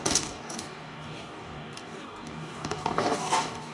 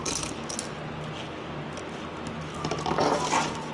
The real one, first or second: second